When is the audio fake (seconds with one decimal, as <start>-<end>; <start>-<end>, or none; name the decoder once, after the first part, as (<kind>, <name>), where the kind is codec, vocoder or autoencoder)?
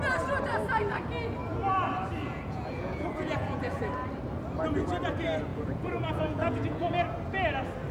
2.2-3.8 (vocoder, Vocos); 5.5-6.9